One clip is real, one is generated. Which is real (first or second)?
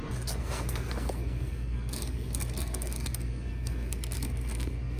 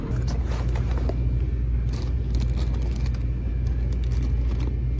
second